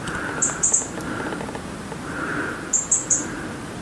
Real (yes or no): yes